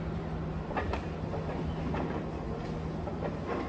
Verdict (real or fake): real